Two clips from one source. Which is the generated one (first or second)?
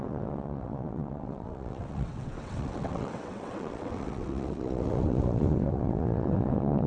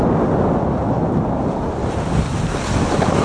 first